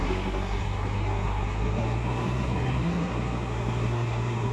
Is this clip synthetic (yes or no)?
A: yes